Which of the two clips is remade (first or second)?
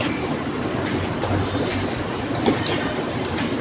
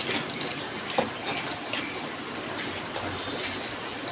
first